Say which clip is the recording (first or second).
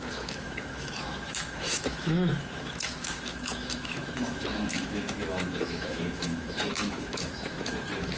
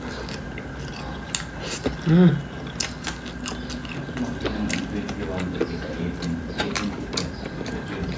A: second